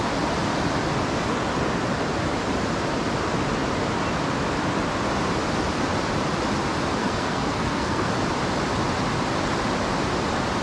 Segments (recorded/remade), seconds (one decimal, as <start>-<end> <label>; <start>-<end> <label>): 0.0-7.0 recorded; 7.0-8.1 remade; 8.1-10.6 recorded